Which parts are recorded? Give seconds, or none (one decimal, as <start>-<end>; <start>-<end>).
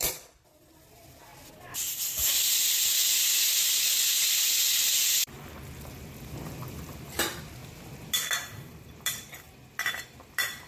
1.3-4.6